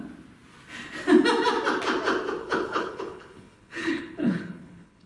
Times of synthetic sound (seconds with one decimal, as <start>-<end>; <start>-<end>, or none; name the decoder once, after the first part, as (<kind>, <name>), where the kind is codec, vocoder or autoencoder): 2.4-5.1 (codec, HILCodec)